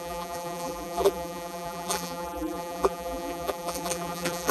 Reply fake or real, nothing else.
fake